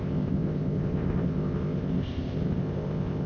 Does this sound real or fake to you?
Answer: fake